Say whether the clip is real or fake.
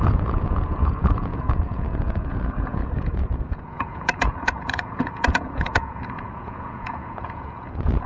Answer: fake